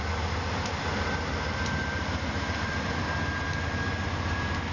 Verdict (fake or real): real